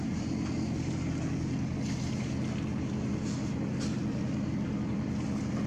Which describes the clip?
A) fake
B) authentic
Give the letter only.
B